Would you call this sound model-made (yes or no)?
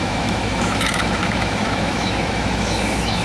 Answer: yes